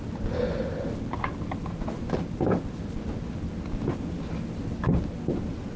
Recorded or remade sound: recorded